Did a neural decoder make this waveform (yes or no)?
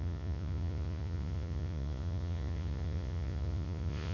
yes